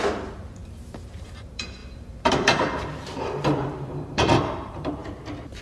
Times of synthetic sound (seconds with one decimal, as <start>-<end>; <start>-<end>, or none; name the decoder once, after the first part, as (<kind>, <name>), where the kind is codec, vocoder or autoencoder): 0.0-5.0 (vocoder, BigVGAN v2)